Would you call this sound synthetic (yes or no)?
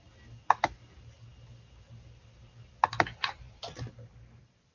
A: no